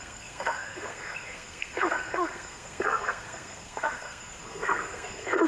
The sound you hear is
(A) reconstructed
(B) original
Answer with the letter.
A